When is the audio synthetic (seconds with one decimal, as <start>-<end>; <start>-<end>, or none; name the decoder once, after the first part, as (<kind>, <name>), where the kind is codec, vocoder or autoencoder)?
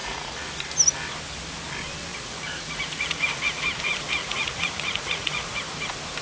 0.0-0.5 (vocoder, Vocos); 2.1-3.6; 4.2-5.4